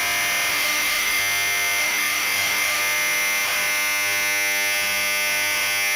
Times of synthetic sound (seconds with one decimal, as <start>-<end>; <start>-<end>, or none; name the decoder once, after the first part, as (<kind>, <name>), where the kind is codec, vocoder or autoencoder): 0.5-1.2 (autoencoder, DAC-VAE); 1.8-2.8